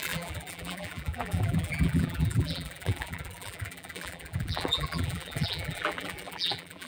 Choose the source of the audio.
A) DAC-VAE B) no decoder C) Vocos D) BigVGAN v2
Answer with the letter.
D